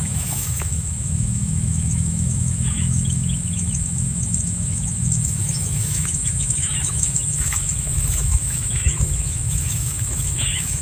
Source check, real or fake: fake